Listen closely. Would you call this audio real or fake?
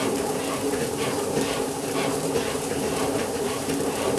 fake